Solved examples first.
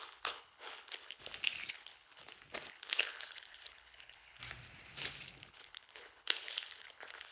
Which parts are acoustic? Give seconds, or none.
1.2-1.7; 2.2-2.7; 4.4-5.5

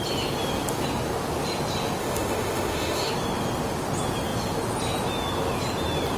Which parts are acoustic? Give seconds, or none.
0.0-2.0; 3.1-6.2

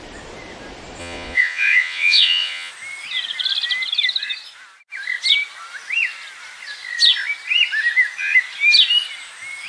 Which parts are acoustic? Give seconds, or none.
0.0-1.0; 2.7-9.7